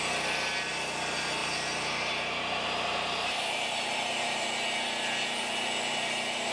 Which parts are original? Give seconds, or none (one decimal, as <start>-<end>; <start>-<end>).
0.0-1.4; 4.5-6.5